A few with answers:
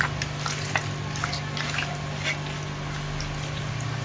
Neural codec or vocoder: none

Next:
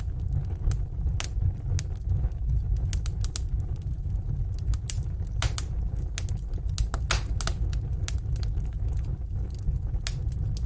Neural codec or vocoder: none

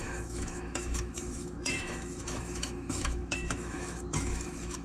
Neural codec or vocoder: autoencoder, DAC-VAE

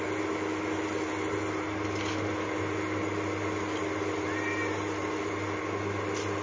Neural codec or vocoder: none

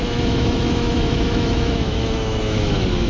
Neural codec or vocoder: autoencoder, DAC-VAE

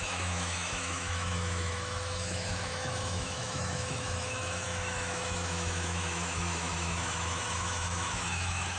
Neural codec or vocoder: autoencoder, DAC-VAE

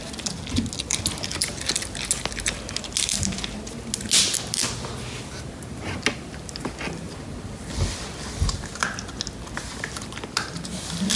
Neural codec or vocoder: none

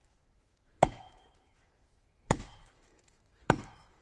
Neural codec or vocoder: autoencoder, DAC-VAE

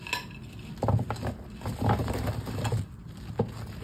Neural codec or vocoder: none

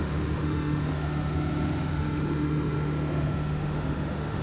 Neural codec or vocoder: autoencoder, DAC-VAE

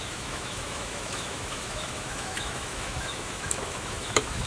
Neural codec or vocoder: autoencoder, DAC-VAE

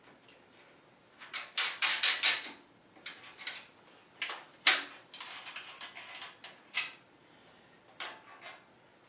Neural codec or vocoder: none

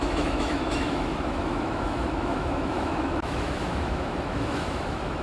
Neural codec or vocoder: autoencoder, DAC-VAE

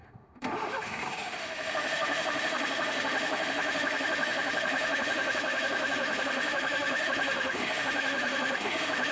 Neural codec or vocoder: autoencoder, DAC-VAE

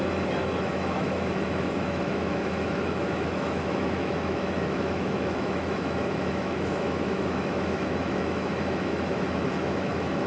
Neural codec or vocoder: autoencoder, DAC-VAE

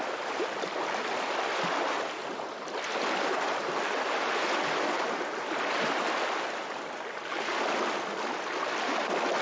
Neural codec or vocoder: none